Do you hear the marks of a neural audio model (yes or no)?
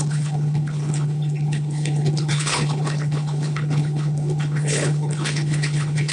yes